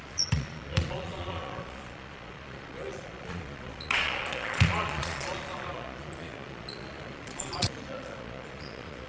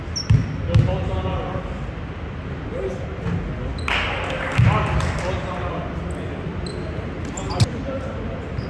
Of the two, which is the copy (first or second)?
first